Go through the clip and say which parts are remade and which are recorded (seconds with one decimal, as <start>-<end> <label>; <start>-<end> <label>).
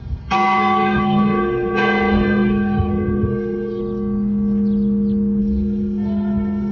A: 0.0-3.8 remade; 3.8-5.4 recorded; 5.4-6.7 remade